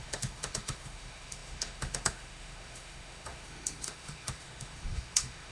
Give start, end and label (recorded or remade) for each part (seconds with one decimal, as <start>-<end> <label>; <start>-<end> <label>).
0.0-5.5 remade